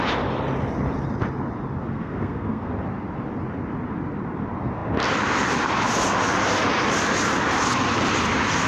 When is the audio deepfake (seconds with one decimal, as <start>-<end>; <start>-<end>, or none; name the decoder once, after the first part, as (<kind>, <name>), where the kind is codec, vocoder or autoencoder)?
1.8-2.7 (codec, SNAC)